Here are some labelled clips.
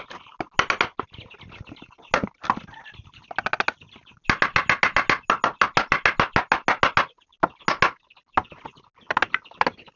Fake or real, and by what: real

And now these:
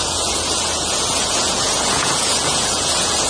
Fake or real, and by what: fake, vocoder, Vocos